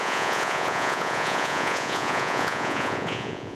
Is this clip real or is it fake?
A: fake